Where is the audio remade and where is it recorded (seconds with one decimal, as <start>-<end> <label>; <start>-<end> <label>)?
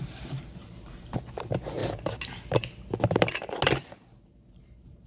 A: 0.0-1.8 remade; 1.8-4.5 recorded; 4.5-5.1 remade